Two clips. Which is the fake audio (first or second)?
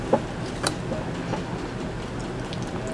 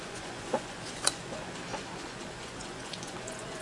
second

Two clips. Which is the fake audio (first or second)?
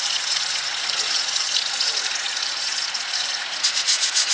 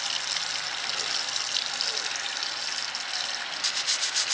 first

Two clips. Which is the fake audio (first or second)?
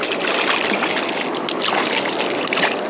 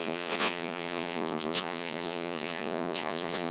second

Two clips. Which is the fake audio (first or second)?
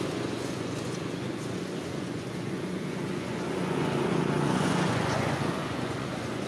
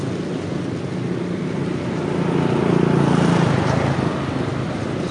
first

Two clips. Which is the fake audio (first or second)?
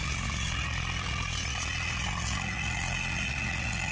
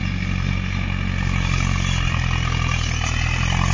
first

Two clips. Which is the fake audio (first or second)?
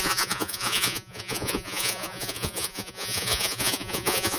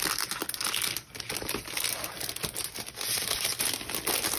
first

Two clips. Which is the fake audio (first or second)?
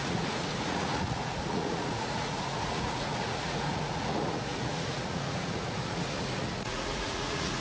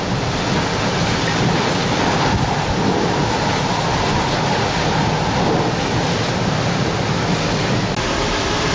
first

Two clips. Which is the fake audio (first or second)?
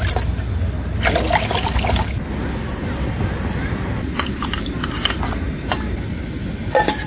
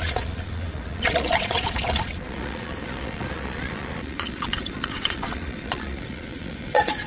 second